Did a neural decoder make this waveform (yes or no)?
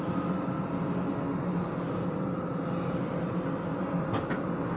no